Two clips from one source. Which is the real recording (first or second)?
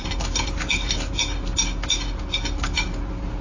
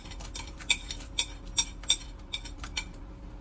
first